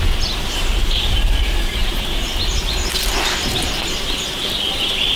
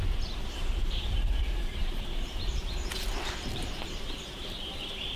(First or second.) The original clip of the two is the first